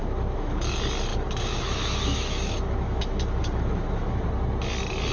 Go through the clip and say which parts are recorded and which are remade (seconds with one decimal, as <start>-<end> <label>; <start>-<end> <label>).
0.0-0.6 remade; 0.6-1.1 recorded; 1.1-4.2 remade; 4.2-5.1 recorded